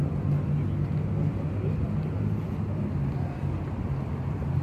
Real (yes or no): yes